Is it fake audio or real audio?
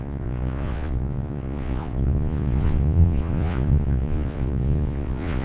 fake